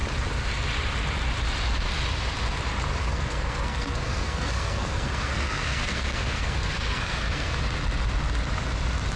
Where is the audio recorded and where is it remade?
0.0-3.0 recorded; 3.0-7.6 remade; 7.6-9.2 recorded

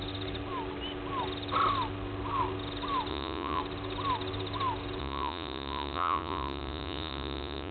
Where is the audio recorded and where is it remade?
0.0-3.1 recorded; 3.1-3.6 remade; 3.6-5.0 recorded; 5.0-7.7 remade

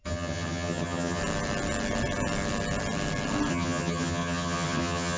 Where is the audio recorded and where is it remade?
0.0-1.2 remade; 1.2-3.5 recorded; 3.5-5.2 remade

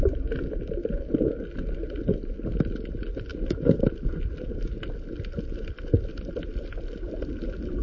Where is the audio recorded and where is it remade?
0.0-7.8 recorded

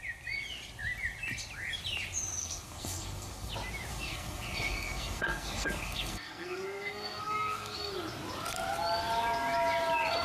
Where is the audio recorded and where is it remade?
0.0-2.4 recorded; 2.4-3.5 remade; 3.5-3.9 recorded; 3.9-7.9 remade; 7.9-10.2 recorded